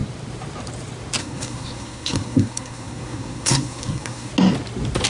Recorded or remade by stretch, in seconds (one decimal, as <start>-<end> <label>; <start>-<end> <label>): 0.0-1.2 recorded; 1.2-4.3 remade; 4.3-5.1 recorded